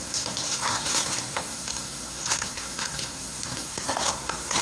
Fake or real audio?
fake